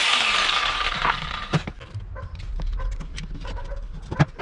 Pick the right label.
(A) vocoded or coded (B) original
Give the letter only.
A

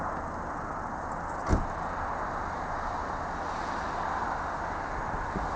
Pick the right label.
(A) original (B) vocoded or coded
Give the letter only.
A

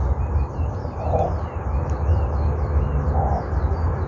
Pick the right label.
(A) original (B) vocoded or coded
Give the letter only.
A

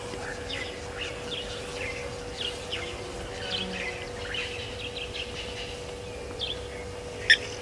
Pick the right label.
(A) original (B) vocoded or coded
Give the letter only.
A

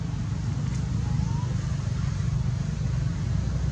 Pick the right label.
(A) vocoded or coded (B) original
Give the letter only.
B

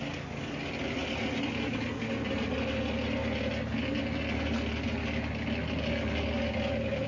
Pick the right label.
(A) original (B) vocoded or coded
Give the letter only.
A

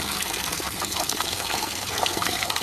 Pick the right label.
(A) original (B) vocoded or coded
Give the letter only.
B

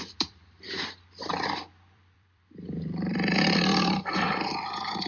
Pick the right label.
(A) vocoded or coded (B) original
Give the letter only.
A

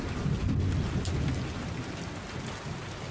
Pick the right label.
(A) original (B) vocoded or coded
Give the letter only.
A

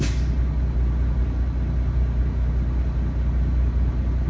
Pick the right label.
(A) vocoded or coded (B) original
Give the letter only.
B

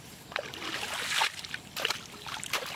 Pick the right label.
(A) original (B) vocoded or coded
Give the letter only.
A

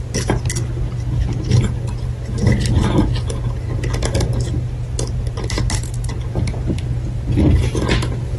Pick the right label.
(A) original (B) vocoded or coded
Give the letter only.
A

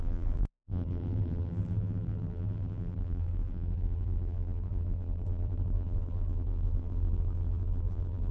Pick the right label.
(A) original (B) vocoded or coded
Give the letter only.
B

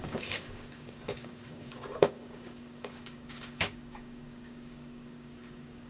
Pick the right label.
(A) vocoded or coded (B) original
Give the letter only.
A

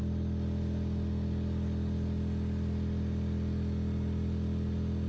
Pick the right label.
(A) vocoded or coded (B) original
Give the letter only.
B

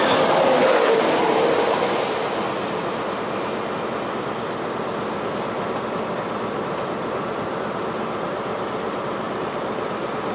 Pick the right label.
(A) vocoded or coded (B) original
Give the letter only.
B